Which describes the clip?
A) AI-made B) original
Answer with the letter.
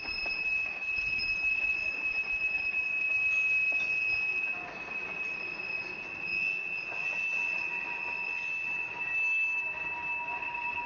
B